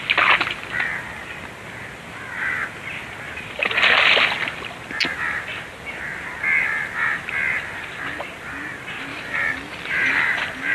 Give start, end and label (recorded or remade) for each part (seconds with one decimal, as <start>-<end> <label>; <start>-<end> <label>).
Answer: 0.0-9.1 recorded; 9.1-10.1 remade; 10.1-10.7 recorded